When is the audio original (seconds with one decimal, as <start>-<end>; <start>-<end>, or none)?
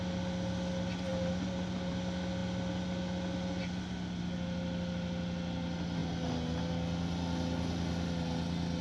0.0-8.8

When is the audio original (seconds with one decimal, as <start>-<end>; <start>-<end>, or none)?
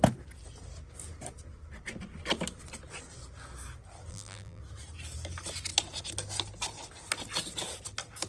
0.0-4.1; 4.6-8.3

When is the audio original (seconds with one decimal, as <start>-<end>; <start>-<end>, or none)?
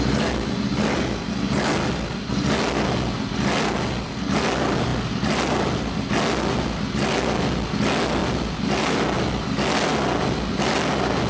0.0-11.3